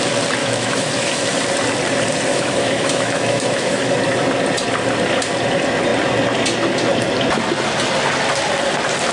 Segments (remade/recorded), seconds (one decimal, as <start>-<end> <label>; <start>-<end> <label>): 0.0-0.4 recorded; 0.4-1.2 remade; 1.2-2.3 recorded; 2.3-3.9 remade; 3.9-9.1 recorded